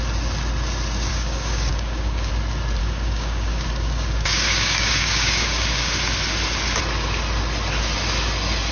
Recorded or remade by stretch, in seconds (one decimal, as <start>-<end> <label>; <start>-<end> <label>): 0.0-1.1 recorded; 1.1-2.3 remade; 2.3-2.8 recorded; 2.8-6.0 remade; 6.0-8.7 recorded